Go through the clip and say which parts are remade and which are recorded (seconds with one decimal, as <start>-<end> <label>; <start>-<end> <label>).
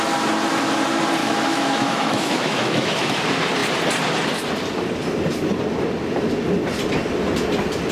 0.0-1.2 recorded; 1.2-3.2 remade; 3.2-7.9 recorded